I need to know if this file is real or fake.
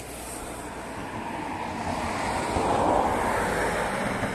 real